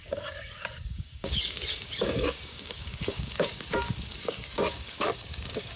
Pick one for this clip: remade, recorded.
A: remade